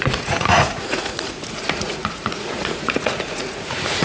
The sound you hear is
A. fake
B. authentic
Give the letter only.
A